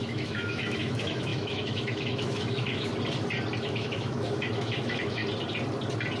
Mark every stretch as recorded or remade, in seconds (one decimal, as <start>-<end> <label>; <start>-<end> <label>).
0.0-2.9 remade; 2.9-3.6 recorded; 3.6-5.2 remade; 5.2-6.2 recorded